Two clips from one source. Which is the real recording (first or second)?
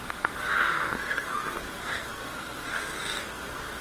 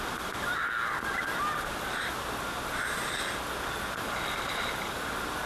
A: second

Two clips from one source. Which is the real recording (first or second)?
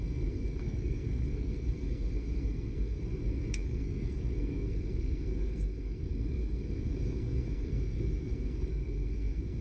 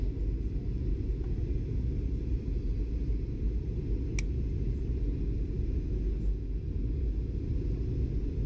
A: second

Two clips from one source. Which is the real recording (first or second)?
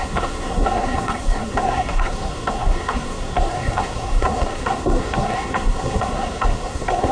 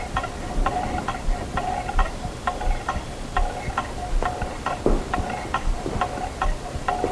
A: second